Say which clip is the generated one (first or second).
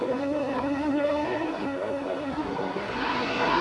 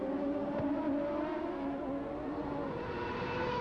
first